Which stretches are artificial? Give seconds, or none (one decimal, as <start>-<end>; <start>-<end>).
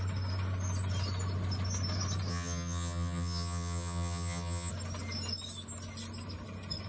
2.3-4.7